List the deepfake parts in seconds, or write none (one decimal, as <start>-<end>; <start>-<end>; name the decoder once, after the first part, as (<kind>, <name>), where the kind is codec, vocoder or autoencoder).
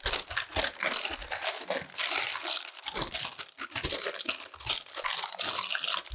1.2-4.7 (vocoder, BigVGAN v2)